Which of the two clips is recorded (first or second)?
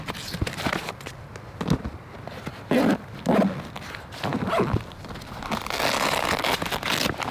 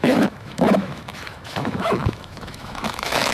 first